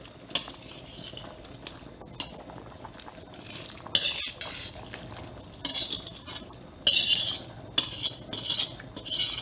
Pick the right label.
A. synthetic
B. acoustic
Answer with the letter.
B